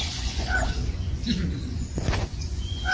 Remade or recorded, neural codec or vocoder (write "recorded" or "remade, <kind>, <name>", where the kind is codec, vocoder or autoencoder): remade, vocoder, Vocos